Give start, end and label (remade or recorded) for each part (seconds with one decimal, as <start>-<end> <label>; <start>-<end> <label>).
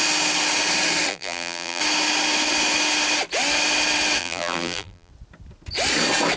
0.0-1.1 recorded; 1.1-1.8 remade; 1.8-4.2 recorded; 4.2-5.1 remade; 5.1-6.4 recorded